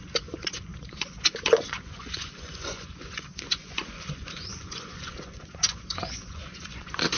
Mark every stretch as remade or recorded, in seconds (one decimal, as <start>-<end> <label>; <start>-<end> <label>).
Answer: 0.0-7.2 remade